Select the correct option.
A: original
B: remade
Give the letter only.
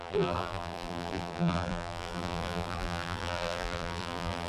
B